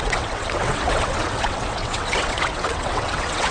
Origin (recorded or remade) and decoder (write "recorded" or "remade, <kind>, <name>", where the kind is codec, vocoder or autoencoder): remade, vocoder, WaveNeXt